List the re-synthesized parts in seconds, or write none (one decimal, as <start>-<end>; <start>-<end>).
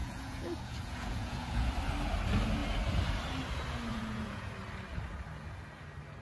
0.0-1.7; 3.9-4.5